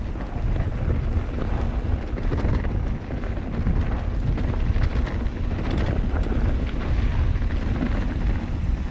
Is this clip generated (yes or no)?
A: no